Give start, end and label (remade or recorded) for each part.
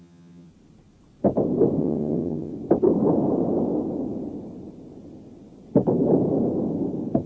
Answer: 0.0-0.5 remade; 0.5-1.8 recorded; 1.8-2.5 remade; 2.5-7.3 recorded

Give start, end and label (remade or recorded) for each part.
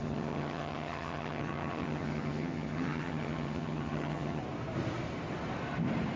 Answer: 0.0-4.4 remade; 4.4-6.2 recorded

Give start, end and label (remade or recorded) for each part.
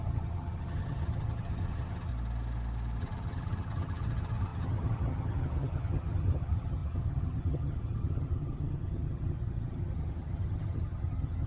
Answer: 0.0-2.1 remade; 2.1-3.0 recorded; 3.0-11.5 remade